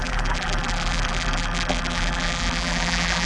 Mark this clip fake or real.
fake